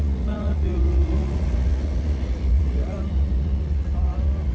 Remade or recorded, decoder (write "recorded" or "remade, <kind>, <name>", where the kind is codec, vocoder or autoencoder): remade, vocoder, Vocos